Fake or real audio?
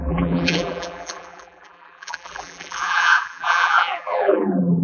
fake